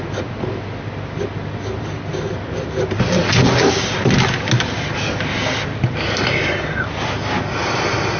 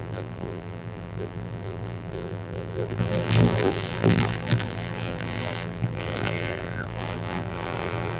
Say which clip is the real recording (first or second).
first